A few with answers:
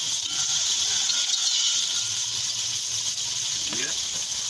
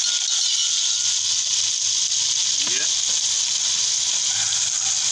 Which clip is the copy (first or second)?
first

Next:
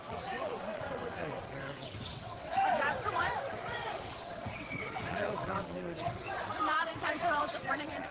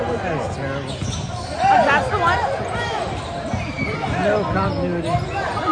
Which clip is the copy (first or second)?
first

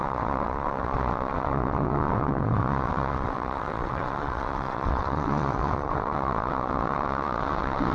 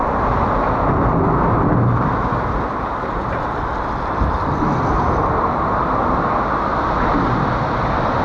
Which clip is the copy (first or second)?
first